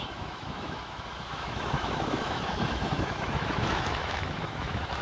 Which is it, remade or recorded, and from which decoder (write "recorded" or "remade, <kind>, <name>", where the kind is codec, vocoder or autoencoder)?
remade, autoencoder, DAC-VAE